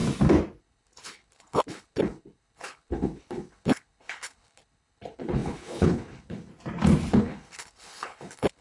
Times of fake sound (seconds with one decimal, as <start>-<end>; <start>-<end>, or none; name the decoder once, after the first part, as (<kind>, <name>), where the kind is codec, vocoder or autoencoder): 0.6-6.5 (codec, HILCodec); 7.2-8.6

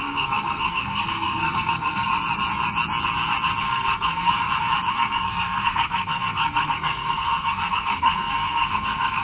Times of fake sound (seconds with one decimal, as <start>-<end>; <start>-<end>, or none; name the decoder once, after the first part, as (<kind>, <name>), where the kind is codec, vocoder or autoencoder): 0.0-2.1 (codec, SNAC); 3.6-4.3; 4.9-9.2

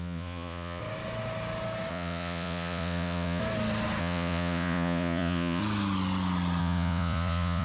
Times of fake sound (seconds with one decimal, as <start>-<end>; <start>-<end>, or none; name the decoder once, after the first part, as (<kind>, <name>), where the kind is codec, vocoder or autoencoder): 0.0-0.8 (vocoder, Vocos); 1.9-3.4; 4.0-5.6; 6.6-7.6

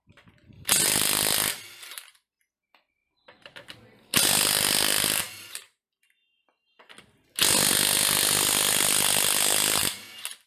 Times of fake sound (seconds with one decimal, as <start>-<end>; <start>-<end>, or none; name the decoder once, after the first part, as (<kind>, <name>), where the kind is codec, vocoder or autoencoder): none